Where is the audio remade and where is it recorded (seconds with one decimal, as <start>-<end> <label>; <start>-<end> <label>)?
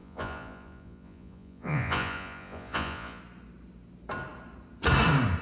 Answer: 0.0-3.2 remade; 3.2-5.4 recorded